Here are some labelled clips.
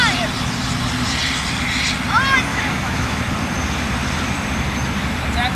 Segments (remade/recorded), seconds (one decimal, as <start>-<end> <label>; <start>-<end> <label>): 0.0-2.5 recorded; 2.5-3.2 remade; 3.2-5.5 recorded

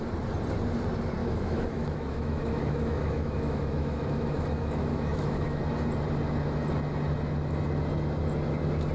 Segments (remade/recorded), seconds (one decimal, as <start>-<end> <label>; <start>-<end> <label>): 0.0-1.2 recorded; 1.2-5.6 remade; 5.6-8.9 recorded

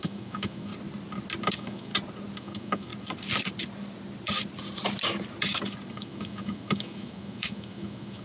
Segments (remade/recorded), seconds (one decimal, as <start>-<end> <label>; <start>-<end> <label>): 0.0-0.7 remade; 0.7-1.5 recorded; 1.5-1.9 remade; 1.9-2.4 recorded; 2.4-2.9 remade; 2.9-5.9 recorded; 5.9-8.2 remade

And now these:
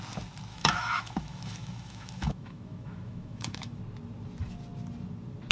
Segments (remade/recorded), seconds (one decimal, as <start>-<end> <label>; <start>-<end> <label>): 0.0-0.5 recorded; 0.5-3.8 remade; 3.8-5.5 recorded

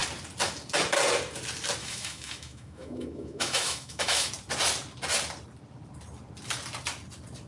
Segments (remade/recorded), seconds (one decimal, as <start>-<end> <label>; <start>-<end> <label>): 0.0-1.8 recorded; 1.8-4.3 remade; 4.3-7.5 recorded

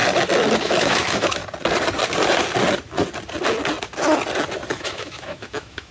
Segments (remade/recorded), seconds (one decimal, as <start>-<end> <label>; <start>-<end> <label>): 0.0-0.6 recorded; 0.6-1.4 remade; 1.4-4.7 recorded; 4.7-5.9 remade

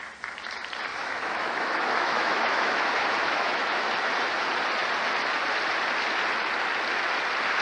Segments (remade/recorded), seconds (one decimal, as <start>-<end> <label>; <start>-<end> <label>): 0.0-0.9 recorded; 0.9-2.8 remade; 2.8-3.2 recorded; 3.2-3.9 remade; 3.9-7.6 recorded